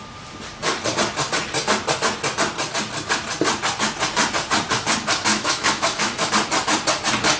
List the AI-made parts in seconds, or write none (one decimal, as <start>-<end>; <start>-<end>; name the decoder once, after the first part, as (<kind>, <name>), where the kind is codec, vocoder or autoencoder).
5.3-6.3 (autoencoder, DAC-VAE)